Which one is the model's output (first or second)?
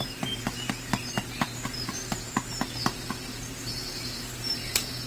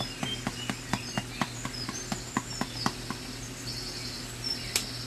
first